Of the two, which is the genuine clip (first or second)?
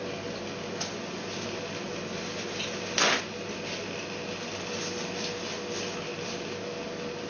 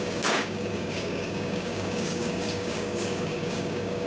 first